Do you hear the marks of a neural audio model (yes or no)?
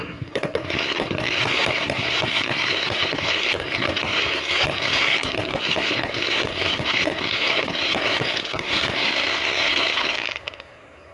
yes